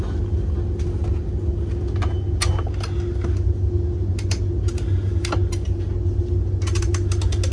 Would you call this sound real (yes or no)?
yes